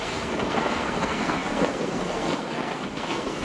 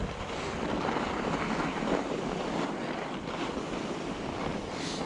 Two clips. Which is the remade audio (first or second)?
first